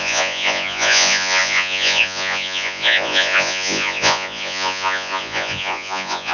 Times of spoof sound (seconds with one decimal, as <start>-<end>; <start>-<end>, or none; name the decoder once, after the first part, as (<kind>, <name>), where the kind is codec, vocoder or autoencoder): 0.0-6.3 (vocoder, Vocos)